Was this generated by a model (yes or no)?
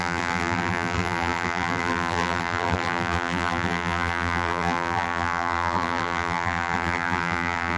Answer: yes